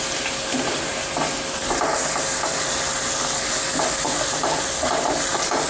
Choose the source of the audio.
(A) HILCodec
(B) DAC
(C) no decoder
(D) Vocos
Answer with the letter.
C